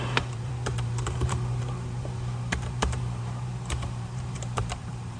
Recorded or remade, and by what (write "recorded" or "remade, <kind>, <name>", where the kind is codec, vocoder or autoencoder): remade, vocoder, BigVGAN v2